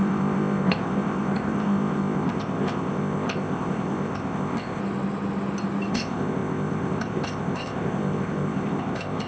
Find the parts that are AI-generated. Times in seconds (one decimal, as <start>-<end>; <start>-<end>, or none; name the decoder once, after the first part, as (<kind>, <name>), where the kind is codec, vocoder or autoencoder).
0.0-4.8 (codec, ZipCodec); 5.9-9.3

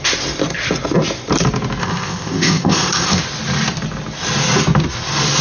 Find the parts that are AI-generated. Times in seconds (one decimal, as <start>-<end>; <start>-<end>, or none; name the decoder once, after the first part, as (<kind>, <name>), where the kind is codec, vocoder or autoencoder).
1.8-3.2 (codec, ZipCodec)

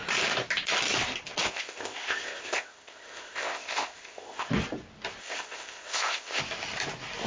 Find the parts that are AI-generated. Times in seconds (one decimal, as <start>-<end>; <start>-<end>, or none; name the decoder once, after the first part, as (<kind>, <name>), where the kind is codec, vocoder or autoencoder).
1.4-4.5 (codec, ZipCodec); 5.2-6.4

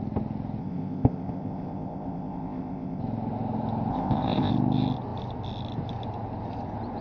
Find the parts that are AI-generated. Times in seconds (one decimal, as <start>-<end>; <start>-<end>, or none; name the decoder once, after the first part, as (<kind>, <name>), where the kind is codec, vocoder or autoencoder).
0.6-3.0 (codec, ZipCodec); 3.9-4.5